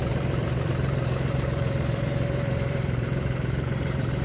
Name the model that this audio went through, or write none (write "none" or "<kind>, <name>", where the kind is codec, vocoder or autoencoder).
vocoder, BigVGAN v2